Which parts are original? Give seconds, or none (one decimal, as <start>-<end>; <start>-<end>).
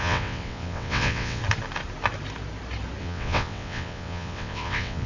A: 1.4-3.0